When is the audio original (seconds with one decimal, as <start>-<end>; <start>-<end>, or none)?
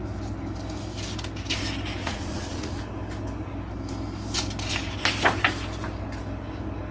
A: 0.0-2.0; 2.8-6.9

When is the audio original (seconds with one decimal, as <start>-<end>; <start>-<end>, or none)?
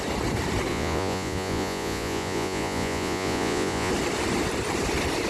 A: 0.0-0.7; 3.9-5.3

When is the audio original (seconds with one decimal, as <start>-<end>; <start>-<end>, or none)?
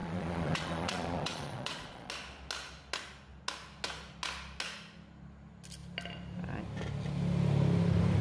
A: 2.1-8.2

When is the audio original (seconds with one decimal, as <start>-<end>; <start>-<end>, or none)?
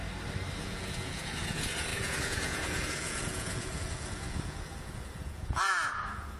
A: 0.0-0.6